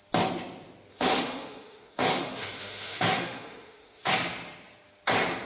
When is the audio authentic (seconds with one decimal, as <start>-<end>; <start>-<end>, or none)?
0.0-0.9; 4.1-5.4